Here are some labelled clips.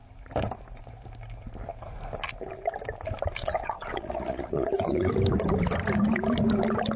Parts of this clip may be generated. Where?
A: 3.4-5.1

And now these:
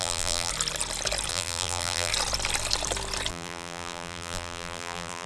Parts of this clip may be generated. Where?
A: 0.0-0.5; 1.3-2.1; 3.3-5.3

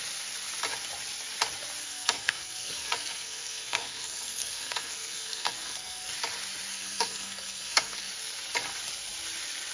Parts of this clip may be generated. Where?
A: 1.8-6.1; 6.7-8.1

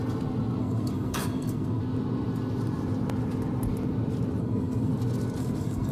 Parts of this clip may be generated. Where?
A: 0.6-1.8; 4.4-4.9; 5.4-5.9